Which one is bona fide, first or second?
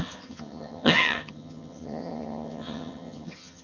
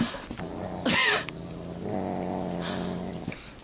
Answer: second